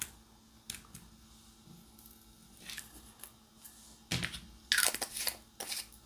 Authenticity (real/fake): real